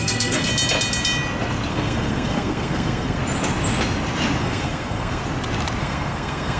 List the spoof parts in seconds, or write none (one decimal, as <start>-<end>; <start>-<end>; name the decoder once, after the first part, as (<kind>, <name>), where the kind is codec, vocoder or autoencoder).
0.0-0.5 (codec, SNAC); 1.7-3.2; 4.4-5.2; 5.8-6.6